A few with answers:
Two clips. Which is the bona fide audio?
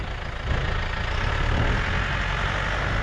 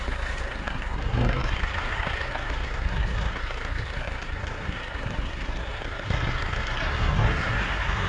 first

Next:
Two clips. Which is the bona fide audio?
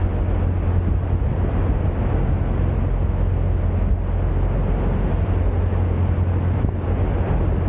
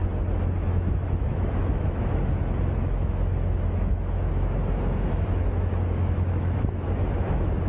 first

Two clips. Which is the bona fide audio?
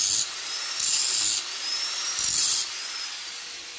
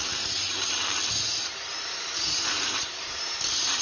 first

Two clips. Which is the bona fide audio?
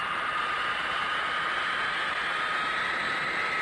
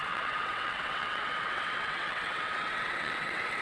first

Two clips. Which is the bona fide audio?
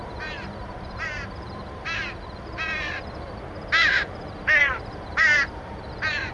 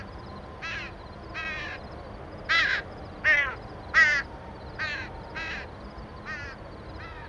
second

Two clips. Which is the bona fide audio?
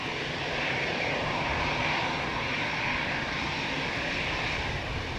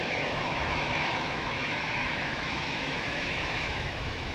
first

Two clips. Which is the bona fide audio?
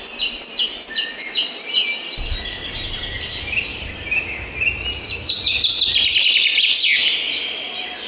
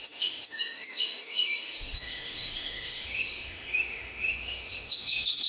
first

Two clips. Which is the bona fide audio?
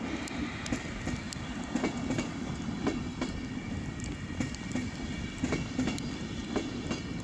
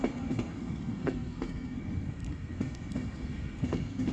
first